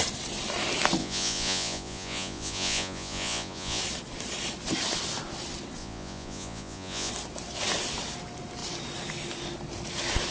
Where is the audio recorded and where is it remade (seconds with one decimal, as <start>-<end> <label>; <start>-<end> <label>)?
0.0-1.0 recorded; 1.0-3.8 remade; 3.8-5.8 recorded; 5.8-7.1 remade; 7.1-10.3 recorded